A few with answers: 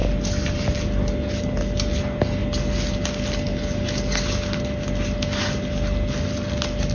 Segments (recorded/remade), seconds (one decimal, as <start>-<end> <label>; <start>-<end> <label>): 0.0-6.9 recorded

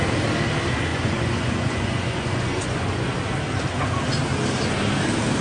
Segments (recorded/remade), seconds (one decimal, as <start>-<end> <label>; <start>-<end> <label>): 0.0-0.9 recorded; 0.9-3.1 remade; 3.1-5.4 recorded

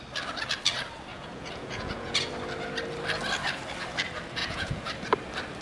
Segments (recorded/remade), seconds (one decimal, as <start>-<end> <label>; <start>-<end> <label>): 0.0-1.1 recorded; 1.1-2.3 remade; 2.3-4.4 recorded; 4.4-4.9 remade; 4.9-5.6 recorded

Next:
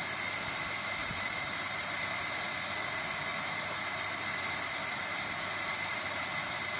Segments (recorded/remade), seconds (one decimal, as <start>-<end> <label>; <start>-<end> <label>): 0.0-1.0 recorded; 1.0-1.8 remade; 1.8-6.8 recorded

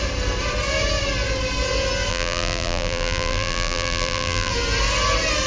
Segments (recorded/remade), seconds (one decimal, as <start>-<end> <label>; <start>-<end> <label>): 0.0-2.1 recorded; 2.1-4.5 remade; 4.5-5.5 recorded